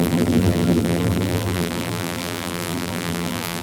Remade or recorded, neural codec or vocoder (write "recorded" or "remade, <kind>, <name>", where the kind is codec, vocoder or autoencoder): remade, vocoder, BigVGAN v2